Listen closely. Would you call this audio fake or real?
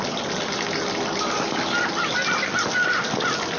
real